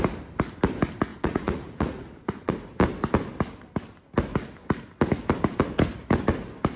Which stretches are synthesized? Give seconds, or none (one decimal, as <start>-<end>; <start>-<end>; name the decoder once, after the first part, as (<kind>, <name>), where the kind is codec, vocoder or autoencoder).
1.1-2.5 (vocoder, Vocos)